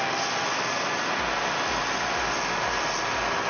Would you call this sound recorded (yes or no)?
yes